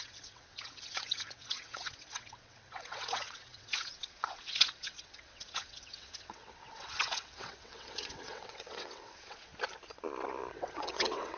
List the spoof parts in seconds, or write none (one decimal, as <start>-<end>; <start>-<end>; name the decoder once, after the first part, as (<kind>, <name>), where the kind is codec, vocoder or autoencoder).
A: 0.0-9.5 (vocoder, WaveNeXt); 10.5-11.4